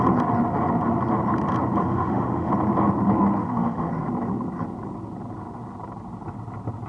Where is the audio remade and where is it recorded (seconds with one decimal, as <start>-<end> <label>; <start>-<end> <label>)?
0.0-1.8 recorded; 1.8-2.5 remade; 2.5-3.4 recorded; 3.4-3.9 remade; 3.9-6.9 recorded